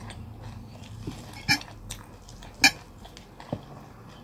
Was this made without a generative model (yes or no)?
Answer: yes